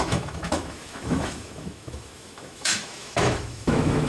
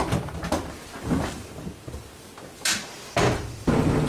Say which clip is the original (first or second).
second